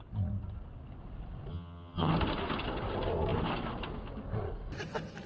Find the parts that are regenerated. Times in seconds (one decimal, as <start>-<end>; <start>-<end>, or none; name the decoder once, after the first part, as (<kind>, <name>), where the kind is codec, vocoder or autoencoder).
1.5-2.1 (vocoder, HiFi-GAN)